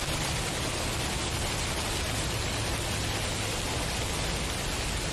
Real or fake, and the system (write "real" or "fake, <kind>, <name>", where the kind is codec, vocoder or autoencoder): real